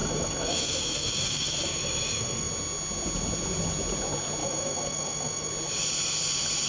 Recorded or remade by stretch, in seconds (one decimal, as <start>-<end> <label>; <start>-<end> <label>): 0.0-2.5 remade; 2.5-4.4 recorded; 4.4-5.5 remade; 5.5-6.7 recorded